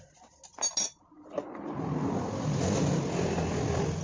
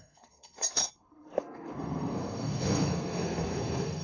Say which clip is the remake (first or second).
second